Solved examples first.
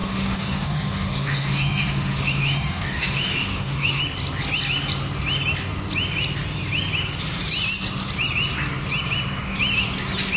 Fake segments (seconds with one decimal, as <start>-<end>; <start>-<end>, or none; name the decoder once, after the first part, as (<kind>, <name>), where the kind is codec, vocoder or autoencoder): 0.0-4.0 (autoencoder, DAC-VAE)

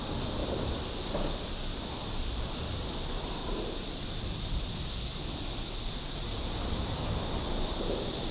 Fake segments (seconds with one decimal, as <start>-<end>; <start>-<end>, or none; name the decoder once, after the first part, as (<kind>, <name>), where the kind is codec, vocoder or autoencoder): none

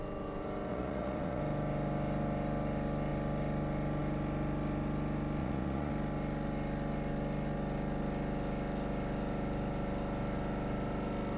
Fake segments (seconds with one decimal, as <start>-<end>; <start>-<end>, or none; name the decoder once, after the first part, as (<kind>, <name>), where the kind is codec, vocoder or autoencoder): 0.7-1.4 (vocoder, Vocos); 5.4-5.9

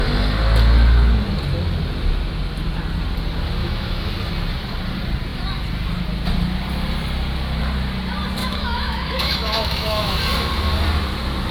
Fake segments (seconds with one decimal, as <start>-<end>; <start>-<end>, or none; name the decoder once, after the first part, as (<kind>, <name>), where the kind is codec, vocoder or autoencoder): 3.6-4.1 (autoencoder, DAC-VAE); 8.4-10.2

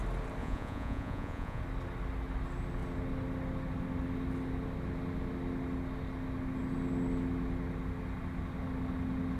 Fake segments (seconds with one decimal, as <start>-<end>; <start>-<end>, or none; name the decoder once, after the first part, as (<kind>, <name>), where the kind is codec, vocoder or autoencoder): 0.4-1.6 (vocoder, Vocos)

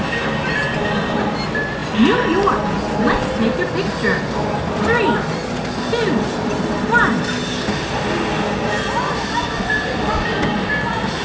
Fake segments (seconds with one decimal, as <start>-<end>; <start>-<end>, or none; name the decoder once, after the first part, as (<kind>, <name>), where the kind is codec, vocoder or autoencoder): none

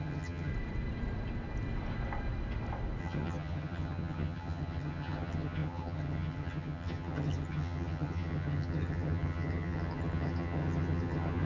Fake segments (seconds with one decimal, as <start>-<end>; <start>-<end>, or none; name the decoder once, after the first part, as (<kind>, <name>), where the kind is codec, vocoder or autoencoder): 0.0-0.5 (vocoder, HiFi-GAN); 3.0-11.5

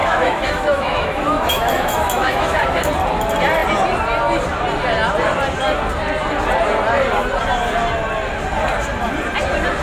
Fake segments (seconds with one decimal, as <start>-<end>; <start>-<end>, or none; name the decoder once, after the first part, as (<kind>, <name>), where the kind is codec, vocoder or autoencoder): 0.0-2.9 (autoencoder, DAC-VAE)